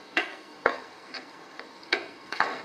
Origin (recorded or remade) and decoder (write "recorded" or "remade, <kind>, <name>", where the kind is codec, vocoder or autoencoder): remade, codec, SNAC